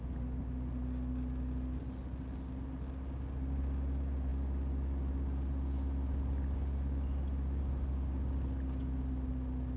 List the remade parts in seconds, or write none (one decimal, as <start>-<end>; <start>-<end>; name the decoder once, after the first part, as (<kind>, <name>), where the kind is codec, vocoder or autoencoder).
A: none